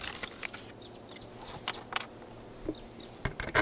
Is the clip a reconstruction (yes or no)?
no